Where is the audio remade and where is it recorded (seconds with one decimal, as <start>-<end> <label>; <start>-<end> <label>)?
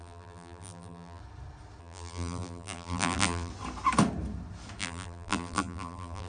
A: 0.0-1.2 remade; 1.2-1.8 recorded; 1.8-3.5 remade; 3.5-4.8 recorded; 4.8-6.3 remade